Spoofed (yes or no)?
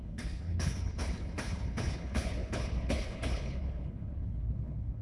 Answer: yes